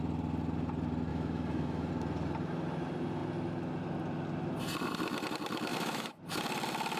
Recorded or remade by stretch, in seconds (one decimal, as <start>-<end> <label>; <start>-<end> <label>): 0.0-1.1 recorded; 1.1-1.9 remade; 1.9-5.7 recorded; 5.7-6.2 remade; 6.2-7.0 recorded